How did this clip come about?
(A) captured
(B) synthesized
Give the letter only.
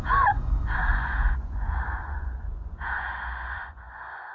B